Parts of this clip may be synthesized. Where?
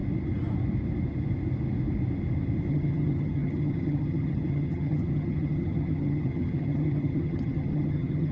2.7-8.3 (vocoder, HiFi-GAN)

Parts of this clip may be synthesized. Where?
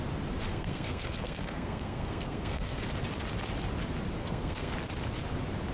0.5-2.8 (codec, SNAC); 4.2-4.7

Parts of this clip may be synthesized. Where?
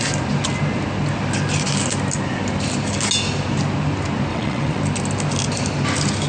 4.3-4.8 (vocoder, WaveNeXt)